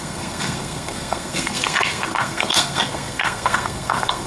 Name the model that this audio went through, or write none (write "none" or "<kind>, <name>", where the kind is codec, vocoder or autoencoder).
codec, SNAC